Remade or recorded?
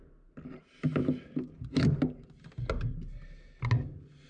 recorded